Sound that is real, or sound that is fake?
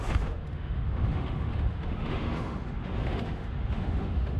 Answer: fake